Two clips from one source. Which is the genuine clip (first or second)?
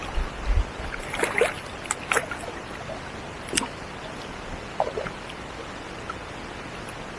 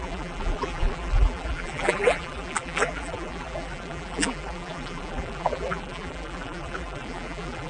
first